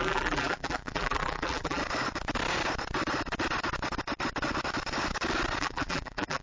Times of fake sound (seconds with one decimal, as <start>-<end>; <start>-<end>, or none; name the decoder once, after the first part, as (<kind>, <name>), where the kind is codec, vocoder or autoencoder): 0.0-1.8 (vocoder, BigVGAN v2); 5.6-6.4